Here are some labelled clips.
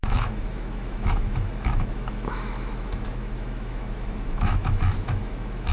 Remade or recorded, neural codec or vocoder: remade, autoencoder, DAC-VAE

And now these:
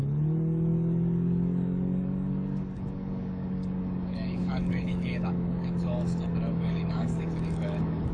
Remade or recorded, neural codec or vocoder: remade, codec, DAC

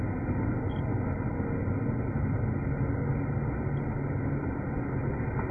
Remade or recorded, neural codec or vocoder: recorded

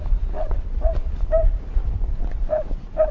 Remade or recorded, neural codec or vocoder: recorded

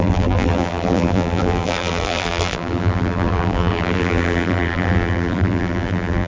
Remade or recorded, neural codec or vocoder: remade, vocoder, BigVGAN v2